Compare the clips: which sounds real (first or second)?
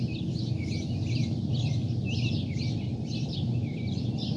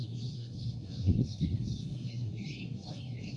first